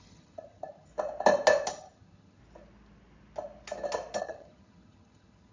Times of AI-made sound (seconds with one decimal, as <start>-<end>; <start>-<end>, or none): 0.0-0.9; 1.7-2.4; 4.2-5.5

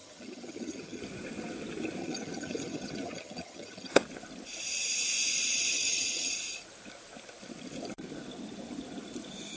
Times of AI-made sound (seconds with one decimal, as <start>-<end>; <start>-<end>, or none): 0.0-1.0; 2.0-4.0; 5.7-6.3

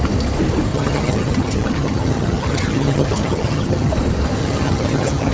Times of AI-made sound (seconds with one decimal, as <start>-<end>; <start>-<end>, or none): 0.7-3.9; 4.4-5.3

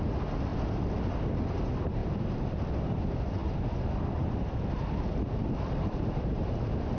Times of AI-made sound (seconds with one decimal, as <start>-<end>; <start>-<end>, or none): none

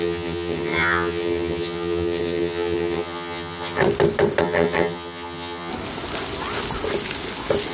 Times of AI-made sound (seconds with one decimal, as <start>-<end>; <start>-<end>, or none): 0.0-3.8; 4.4-5.7

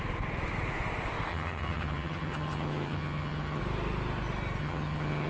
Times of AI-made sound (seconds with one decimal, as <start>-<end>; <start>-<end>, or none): 1.3-3.6; 4.6-5.3

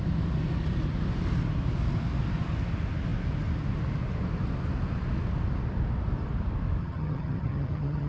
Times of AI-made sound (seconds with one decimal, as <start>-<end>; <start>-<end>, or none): 6.8-8.1